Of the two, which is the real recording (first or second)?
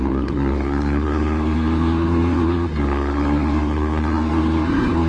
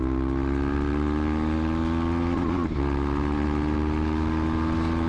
second